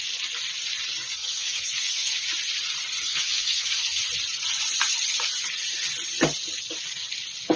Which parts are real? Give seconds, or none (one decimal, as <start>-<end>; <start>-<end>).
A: 0.0-1.2; 2.2-3.1; 4.0-7.6